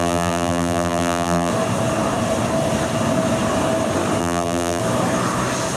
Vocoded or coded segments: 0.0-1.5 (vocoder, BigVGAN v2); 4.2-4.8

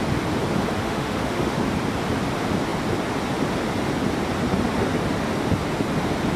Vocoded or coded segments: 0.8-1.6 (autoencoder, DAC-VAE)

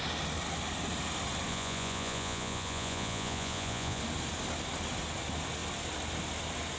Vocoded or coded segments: 1.5-4.0 (vocoder, Vocos)

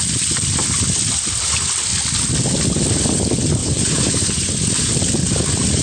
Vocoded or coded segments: 3.6-4.5 (vocoder, Vocos)